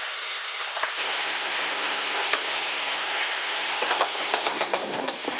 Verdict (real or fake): fake